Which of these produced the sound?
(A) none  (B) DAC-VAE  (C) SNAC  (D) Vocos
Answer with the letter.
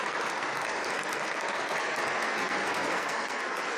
C